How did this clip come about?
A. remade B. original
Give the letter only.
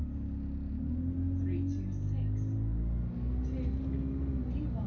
B